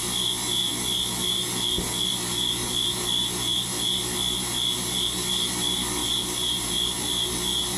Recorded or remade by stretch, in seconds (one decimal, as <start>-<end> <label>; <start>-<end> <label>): 0.0-7.8 recorded